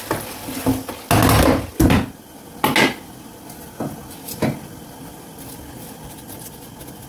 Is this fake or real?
real